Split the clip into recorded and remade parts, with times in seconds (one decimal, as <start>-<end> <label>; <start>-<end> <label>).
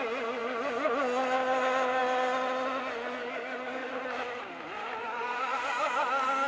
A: 0.0-3.2 recorded; 3.2-3.9 remade; 3.9-5.0 recorded; 5.0-6.0 remade; 6.0-6.5 recorded